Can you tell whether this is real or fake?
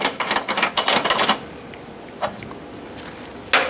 real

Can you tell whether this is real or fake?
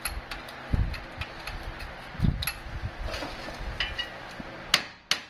real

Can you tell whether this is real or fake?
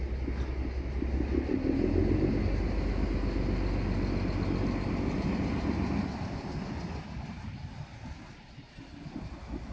real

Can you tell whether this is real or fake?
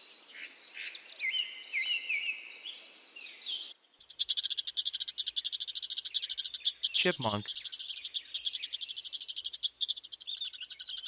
real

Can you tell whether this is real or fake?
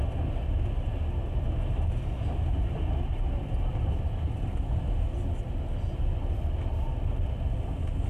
real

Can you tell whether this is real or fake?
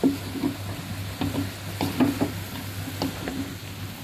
real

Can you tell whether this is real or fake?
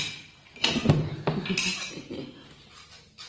real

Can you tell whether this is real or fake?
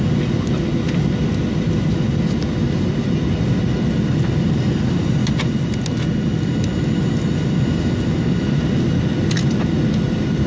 real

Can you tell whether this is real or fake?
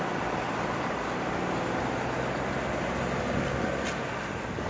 real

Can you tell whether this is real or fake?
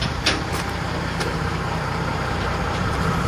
fake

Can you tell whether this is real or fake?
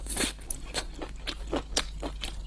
real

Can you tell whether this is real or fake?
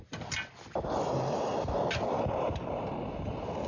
real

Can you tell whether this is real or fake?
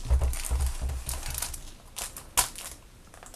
real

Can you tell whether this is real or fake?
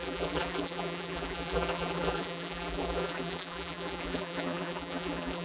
fake